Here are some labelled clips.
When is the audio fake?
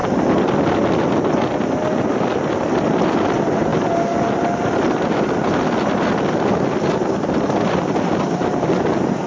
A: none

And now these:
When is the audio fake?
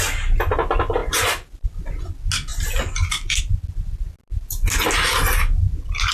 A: 1.0-2.1; 2.5-3.4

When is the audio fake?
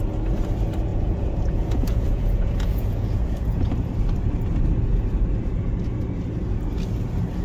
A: 0.9-3.7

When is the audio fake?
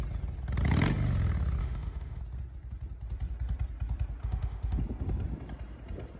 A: 1.6-2.2; 4.2-4.8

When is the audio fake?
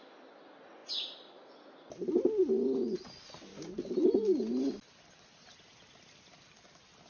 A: none